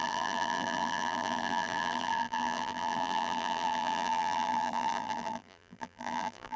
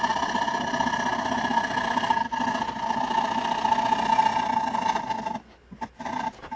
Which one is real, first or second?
second